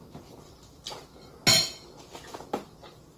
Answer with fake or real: real